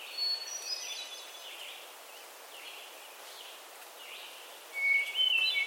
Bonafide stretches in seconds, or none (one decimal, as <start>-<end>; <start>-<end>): 0.4-3.8